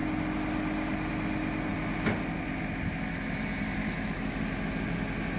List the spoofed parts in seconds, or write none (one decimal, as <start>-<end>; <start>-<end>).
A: 3.8-4.4